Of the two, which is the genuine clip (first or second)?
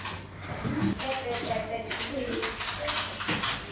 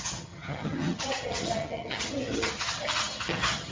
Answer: first